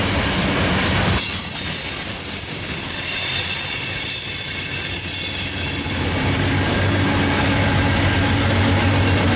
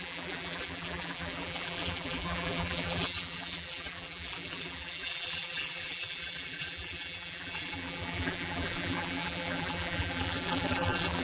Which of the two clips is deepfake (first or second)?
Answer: second